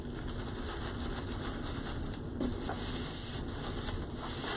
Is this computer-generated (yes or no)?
no